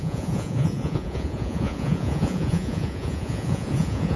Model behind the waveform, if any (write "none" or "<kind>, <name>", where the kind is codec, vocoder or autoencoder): vocoder, Vocos